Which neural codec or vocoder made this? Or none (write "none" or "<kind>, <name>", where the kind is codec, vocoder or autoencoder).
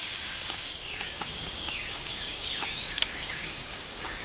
codec, DAC